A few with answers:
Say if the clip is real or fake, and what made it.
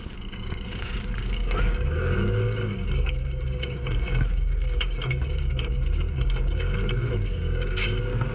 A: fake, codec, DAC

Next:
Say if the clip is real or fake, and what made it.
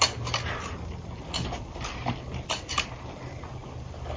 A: real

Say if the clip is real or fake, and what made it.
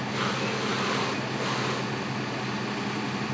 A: real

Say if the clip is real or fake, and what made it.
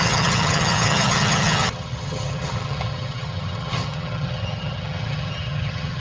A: fake, vocoder, HiFi-GAN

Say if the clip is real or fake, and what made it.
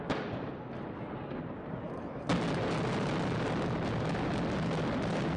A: real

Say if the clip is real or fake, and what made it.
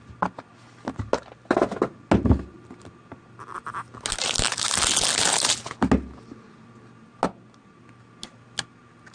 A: real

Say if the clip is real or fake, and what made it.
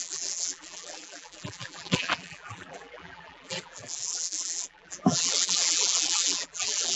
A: fake, vocoder, BigVGAN v2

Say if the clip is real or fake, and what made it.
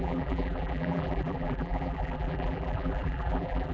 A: fake, vocoder, BigVGAN v2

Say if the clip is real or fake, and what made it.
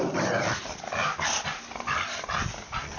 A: real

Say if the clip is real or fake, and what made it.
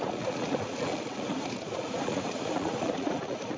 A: fake, vocoder, Vocos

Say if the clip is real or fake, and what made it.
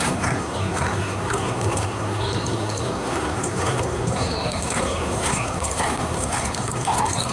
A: fake, codec, SNAC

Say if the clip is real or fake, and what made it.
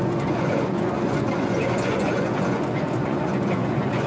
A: fake, vocoder, Vocos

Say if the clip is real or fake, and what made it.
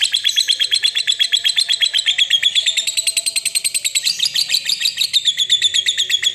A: fake, vocoder, BigVGAN v2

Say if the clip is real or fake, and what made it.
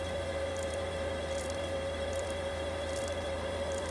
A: fake, vocoder, BigVGAN v2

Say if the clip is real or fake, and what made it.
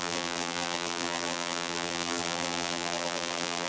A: fake, vocoder, BigVGAN v2